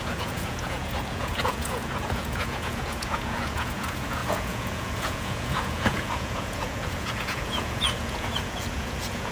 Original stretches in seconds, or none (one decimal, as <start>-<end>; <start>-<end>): none

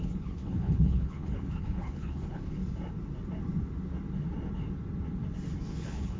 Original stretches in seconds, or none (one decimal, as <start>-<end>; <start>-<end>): 2.6-5.7

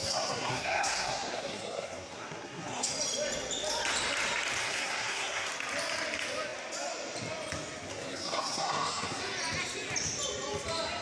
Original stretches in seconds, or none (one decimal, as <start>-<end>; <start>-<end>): 2.9-4.6; 5.5-7.9; 9.2-11.0

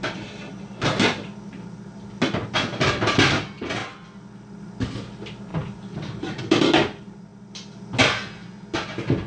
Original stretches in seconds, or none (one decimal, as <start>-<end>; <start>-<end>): 0.0-9.3

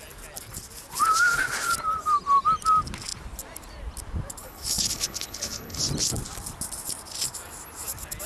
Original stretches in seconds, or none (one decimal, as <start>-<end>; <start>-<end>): 0.0-4.4; 5.8-8.3

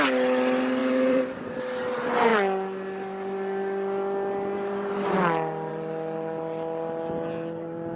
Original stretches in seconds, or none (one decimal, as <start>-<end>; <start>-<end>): 0.0-0.8; 1.6-8.0

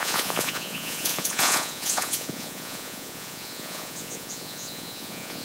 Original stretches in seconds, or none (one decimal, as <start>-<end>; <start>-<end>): none

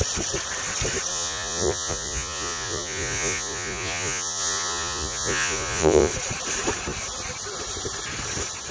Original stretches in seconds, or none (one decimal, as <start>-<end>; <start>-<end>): 0.0-1.1; 6.1-8.7